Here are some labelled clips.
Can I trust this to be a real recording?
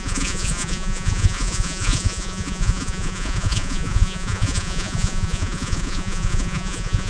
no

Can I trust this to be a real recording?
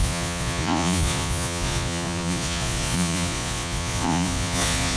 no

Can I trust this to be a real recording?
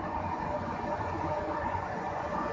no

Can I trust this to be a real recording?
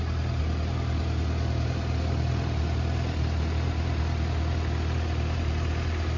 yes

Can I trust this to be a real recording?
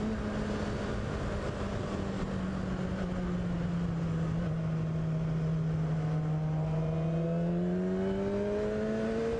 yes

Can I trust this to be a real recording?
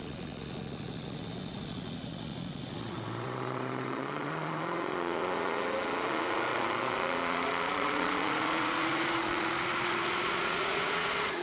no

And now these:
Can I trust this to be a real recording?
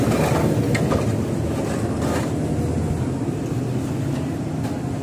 yes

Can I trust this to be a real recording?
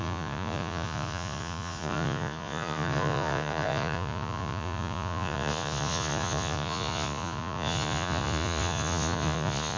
no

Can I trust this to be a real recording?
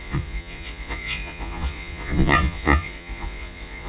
no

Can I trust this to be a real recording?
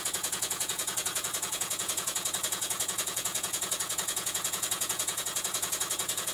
no